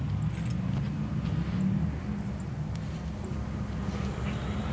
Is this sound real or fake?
real